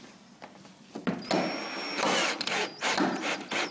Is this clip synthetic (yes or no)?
no